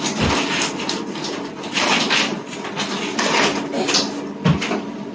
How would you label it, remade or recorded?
recorded